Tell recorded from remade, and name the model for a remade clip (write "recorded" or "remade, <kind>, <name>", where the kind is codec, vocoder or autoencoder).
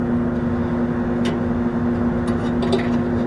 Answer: recorded